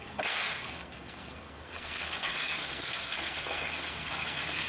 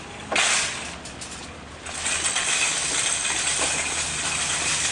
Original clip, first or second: second